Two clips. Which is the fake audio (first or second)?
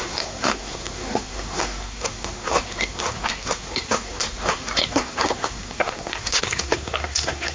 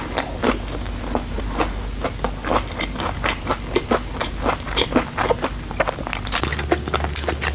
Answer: first